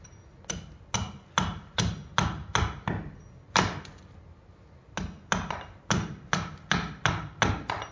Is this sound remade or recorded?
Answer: recorded